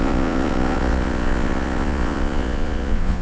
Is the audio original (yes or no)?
no